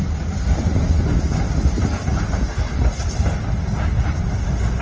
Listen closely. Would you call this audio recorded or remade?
recorded